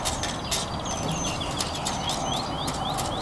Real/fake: real